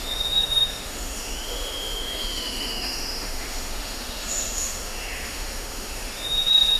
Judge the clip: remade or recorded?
remade